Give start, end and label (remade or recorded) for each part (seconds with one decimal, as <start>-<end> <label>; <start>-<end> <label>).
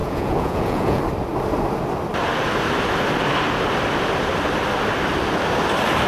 0.0-1.0 remade; 1.0-6.1 recorded